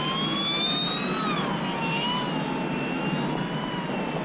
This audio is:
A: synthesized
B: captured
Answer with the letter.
B